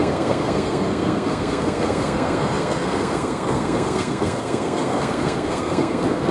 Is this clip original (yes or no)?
no